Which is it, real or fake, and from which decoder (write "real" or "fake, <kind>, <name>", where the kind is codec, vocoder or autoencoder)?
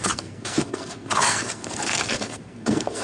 fake, codec, SNAC